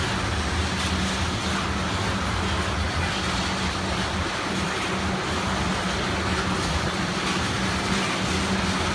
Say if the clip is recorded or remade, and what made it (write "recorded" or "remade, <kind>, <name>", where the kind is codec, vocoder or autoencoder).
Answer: recorded